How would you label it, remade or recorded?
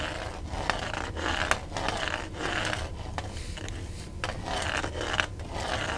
recorded